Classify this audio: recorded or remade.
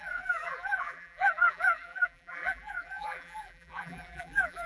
remade